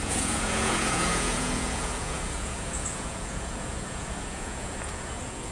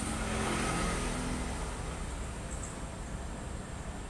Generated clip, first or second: first